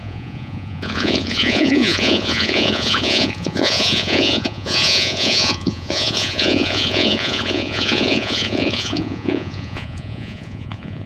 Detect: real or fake fake